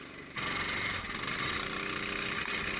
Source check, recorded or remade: recorded